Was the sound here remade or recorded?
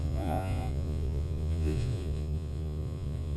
remade